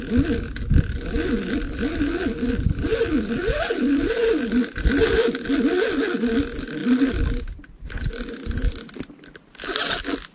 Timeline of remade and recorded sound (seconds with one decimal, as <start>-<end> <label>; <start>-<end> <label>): 0.0-10.3 recorded